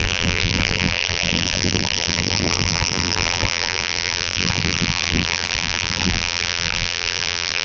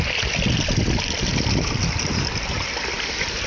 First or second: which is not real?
first